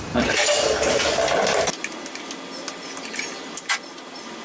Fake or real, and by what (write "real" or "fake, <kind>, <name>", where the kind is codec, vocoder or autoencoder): real